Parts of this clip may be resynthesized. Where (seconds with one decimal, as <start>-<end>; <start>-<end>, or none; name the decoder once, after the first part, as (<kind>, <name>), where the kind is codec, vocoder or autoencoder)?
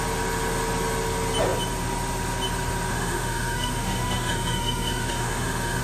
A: 2.9-5.8 (autoencoder, DAC-VAE)